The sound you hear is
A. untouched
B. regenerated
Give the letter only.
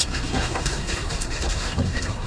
B